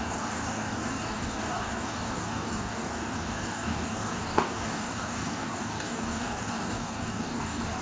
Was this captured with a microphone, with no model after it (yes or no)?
no